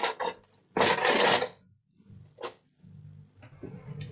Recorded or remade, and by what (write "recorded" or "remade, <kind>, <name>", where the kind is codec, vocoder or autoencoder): recorded